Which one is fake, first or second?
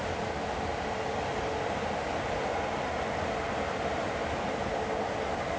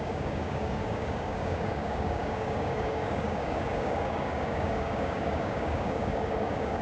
second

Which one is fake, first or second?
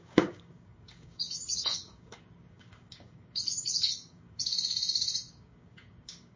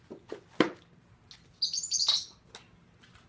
first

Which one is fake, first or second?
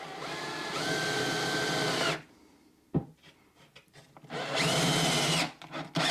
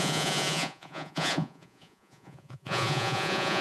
second